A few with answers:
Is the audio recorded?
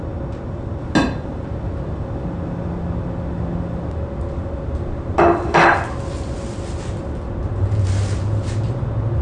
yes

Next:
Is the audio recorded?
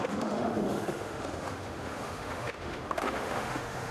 no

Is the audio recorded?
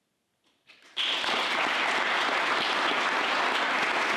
yes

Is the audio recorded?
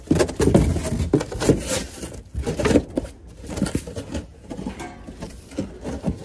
yes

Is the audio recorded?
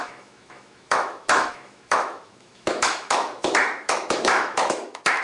no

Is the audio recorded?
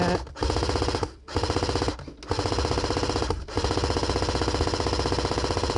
yes